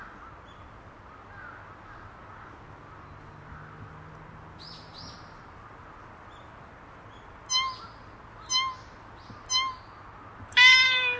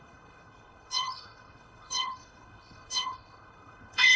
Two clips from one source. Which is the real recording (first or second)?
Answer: first